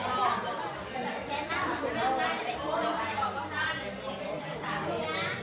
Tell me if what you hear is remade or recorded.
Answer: remade